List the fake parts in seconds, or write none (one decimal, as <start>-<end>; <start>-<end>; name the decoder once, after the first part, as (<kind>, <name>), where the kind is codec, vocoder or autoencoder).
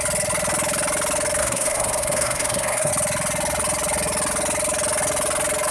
1.4-2.9 (codec, SNAC)